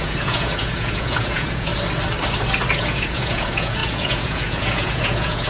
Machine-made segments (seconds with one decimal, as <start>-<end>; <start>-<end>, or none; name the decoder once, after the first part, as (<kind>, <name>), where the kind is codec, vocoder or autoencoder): 0.0-1.7 (vocoder, Vocos); 2.8-5.5